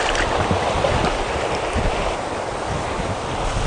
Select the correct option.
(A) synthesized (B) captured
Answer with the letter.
B